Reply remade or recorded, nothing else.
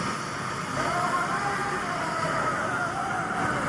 recorded